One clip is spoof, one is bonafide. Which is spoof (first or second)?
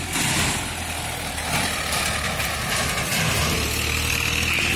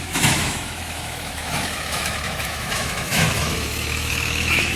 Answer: second